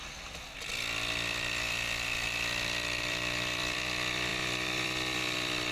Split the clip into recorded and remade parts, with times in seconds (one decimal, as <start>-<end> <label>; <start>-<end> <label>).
0.0-5.7 remade